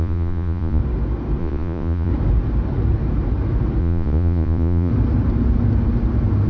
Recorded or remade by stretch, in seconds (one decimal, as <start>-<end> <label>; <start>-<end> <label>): 0.0-0.8 remade; 0.8-1.4 recorded; 1.4-2.1 remade; 2.1-3.8 recorded; 3.8-4.9 remade; 4.9-6.5 recorded